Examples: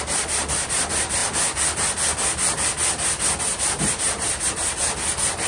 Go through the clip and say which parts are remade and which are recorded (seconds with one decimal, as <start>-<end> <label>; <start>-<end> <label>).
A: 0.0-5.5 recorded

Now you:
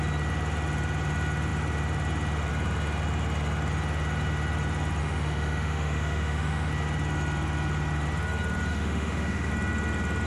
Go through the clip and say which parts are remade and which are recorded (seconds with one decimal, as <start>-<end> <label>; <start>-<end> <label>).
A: 0.0-5.0 recorded; 5.0-6.7 remade; 6.7-8.7 recorded; 8.7-9.5 remade; 9.5-10.3 recorded

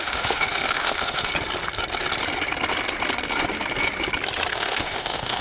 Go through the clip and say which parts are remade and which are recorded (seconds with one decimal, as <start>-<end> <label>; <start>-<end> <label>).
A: 0.0-1.3 remade; 1.3-4.5 recorded; 4.5-5.4 remade

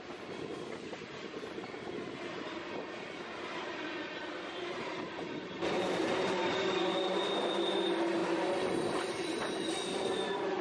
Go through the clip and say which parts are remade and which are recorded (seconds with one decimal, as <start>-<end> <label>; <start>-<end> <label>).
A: 0.0-10.6 recorded

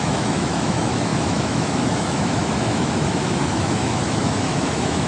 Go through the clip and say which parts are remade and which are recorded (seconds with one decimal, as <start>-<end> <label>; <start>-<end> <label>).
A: 0.0-5.1 remade

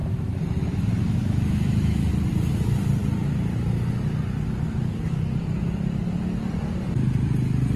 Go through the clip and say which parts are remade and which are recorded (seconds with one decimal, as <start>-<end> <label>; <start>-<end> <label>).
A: 0.0-2.1 remade; 2.1-7.8 recorded

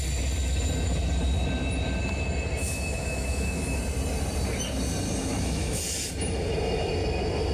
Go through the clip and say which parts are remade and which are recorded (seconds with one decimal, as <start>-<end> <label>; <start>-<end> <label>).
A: 0.0-2.6 recorded; 2.6-3.8 remade; 3.8-5.3 recorded; 5.3-5.8 remade; 5.8-7.5 recorded

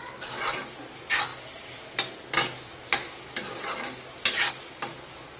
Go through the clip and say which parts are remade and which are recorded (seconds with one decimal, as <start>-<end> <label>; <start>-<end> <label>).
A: 0.0-5.4 recorded